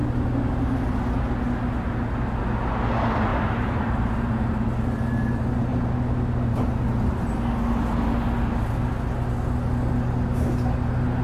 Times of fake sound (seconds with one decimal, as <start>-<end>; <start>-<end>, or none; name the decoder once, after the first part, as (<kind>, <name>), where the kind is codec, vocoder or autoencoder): 3.3-4.7 (vocoder, BigVGAN v2)